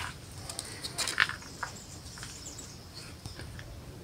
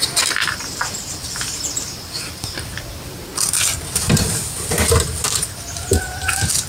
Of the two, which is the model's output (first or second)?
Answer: second